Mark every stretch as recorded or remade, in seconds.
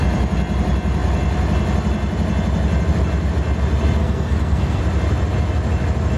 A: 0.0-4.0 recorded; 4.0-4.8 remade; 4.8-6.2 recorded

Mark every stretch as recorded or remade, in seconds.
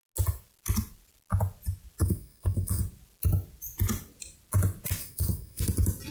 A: 0.0-2.0 recorded; 2.0-2.8 remade; 2.8-5.0 recorded; 5.0-5.6 remade; 5.6-6.1 recorded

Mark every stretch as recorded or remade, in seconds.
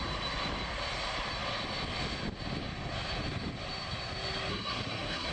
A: 0.0-4.5 recorded; 4.5-5.3 remade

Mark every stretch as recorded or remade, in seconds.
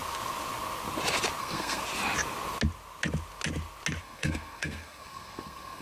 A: 0.0-1.4 recorded; 1.4-1.8 remade; 1.8-4.0 recorded; 4.0-5.8 remade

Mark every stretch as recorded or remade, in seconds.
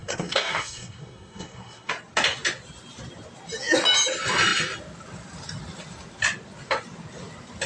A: 0.0-1.9 remade; 1.9-7.7 recorded